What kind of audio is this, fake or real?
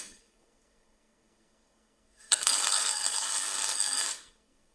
fake